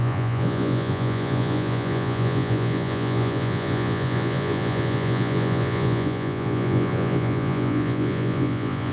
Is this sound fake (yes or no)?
yes